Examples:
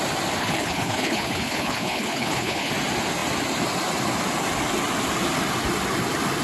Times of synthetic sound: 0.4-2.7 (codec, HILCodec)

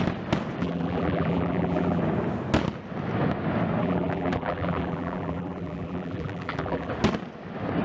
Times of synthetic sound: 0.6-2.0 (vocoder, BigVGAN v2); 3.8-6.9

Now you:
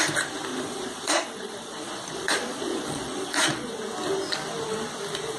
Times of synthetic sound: 0.5-3.7 (vocoder, Vocos)

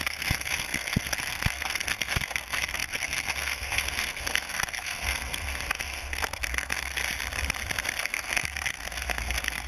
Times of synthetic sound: 0.0-7.0 (codec, SNAC); 8.0-9.7

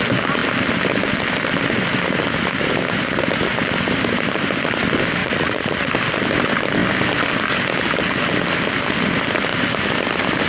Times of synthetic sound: 5.2-5.9 (vocoder, Vocos)

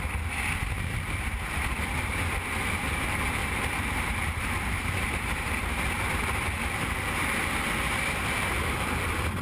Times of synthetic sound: 3.4-5.8 (vocoder, BigVGAN v2)